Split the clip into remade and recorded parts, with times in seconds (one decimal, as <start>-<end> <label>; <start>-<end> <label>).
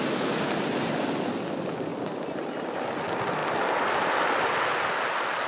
0.0-5.5 recorded